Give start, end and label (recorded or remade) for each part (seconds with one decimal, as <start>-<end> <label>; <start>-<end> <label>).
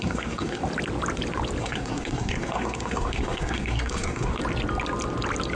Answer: 0.0-0.6 remade; 0.6-1.6 recorded; 1.6-4.4 remade; 4.4-5.5 recorded